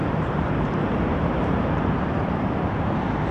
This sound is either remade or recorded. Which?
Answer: remade